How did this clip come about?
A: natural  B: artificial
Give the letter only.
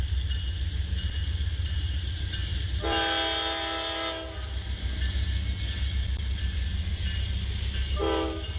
A